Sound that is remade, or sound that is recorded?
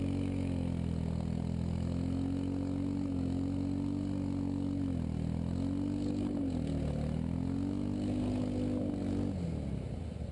recorded